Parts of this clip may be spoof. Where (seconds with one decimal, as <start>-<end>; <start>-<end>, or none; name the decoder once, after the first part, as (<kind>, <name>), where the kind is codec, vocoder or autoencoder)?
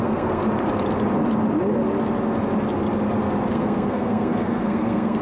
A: 0.0-0.4 (codec, SNAC); 3.5-5.2